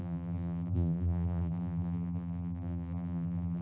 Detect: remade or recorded remade